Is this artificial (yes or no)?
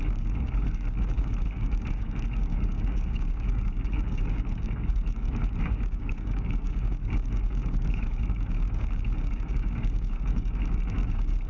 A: yes